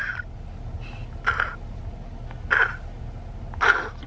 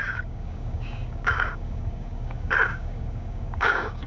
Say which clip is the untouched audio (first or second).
first